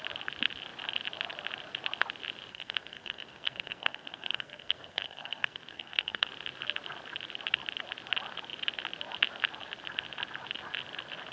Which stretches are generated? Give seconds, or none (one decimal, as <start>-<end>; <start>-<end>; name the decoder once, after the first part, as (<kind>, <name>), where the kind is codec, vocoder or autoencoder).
2.5-6.3 (codec, SNAC)